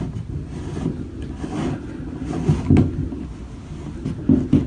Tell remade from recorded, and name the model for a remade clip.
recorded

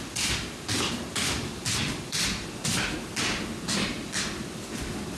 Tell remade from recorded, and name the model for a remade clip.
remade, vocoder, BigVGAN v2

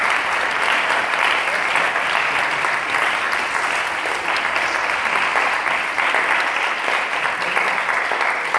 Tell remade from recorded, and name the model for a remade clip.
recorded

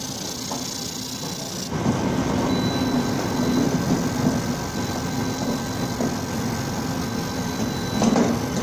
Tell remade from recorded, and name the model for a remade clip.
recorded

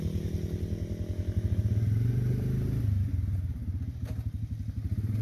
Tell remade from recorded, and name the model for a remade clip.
recorded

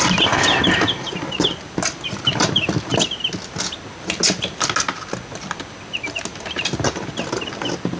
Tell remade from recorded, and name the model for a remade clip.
recorded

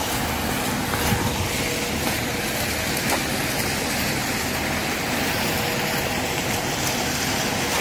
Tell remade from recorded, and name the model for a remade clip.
recorded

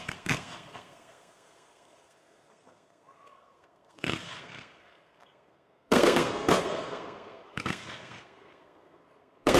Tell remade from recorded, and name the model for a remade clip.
remade, codec, SNAC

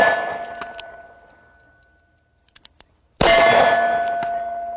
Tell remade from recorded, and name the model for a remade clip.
recorded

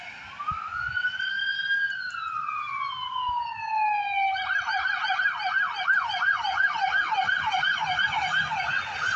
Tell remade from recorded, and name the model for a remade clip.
recorded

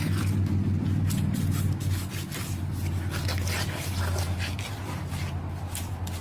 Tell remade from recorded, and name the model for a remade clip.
recorded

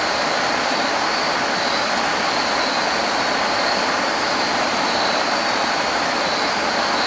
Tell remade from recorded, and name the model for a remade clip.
recorded